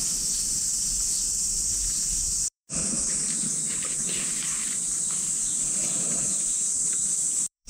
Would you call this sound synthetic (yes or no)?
yes